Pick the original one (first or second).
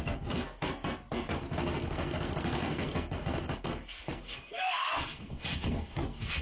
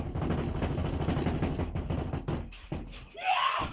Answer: second